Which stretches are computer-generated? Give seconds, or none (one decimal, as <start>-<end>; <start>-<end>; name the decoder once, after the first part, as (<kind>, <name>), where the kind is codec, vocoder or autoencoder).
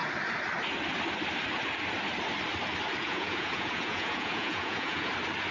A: 3.0-5.1 (vocoder, Vocos)